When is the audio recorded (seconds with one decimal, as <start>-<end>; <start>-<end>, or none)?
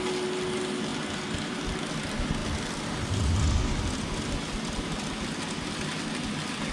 0.0-6.7